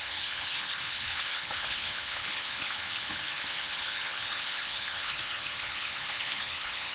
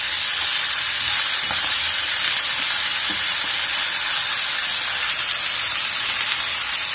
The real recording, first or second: second